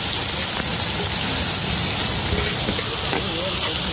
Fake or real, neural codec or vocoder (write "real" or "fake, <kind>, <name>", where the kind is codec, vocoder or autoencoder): real